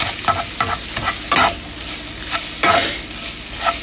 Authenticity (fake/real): real